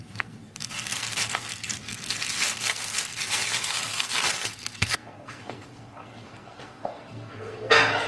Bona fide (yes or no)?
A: no